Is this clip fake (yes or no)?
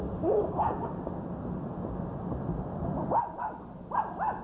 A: no